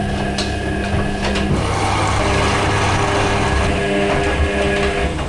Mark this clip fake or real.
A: real